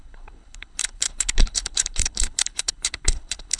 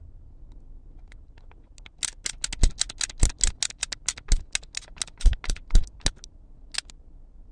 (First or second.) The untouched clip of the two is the second